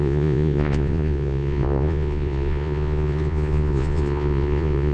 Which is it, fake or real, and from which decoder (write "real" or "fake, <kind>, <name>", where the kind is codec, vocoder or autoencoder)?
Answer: fake, vocoder, Vocos